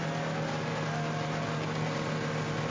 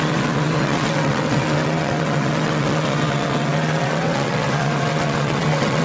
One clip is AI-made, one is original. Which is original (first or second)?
first